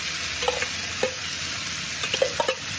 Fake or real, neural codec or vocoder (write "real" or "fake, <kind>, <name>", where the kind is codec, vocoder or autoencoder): real